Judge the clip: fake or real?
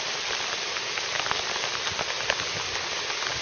real